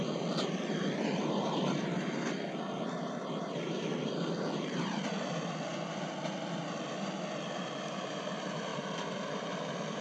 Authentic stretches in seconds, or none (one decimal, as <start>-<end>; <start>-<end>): none